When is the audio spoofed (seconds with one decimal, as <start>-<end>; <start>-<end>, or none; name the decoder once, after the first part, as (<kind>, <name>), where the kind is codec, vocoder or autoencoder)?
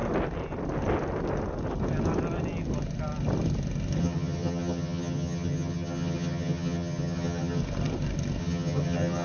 4.0-7.6 (vocoder, HiFi-GAN); 8.4-9.2